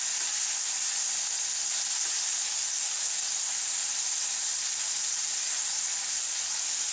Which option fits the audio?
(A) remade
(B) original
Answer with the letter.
B